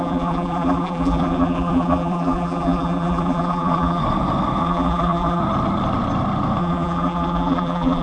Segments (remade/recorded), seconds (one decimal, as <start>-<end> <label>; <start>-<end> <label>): 0.0-4.0 remade; 4.0-4.6 recorded; 4.6-5.4 remade; 5.4-6.6 recorded; 6.6-8.0 remade